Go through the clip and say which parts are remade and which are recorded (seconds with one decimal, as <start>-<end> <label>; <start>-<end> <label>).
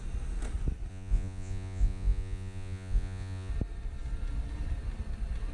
0.0-0.9 recorded; 0.9-3.5 remade; 3.5-5.5 recorded